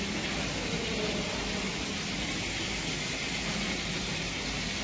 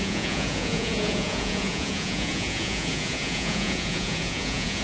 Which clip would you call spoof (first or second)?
second